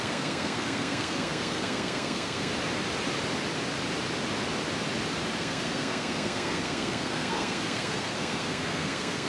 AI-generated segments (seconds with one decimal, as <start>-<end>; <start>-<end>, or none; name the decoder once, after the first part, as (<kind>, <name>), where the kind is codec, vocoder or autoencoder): 0.0-2.5 (codec, SNAC); 5.4-9.3

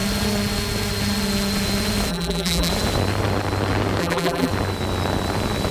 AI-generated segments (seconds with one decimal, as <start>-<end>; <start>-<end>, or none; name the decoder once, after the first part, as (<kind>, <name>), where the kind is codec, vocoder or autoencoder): 2.1-2.7 (vocoder, BigVGAN v2); 4.0-4.5

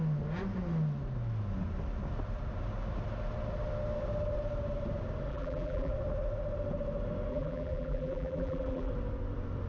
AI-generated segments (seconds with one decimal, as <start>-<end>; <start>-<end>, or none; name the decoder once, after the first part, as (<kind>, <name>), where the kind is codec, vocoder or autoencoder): 5.3-5.9 (vocoder, BigVGAN v2); 7.3-8.9

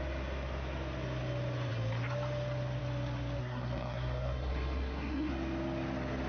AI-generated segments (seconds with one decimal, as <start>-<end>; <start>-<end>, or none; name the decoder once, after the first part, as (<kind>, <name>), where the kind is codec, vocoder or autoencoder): 3.4-5.3 (codec, SNAC)

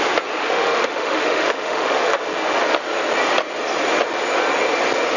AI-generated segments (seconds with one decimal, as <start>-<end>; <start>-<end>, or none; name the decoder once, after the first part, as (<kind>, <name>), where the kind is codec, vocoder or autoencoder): 0.4-2.2 (autoencoder, DAC-VAE)